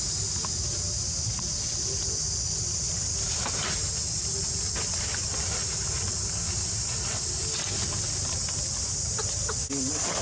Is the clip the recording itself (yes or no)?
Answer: yes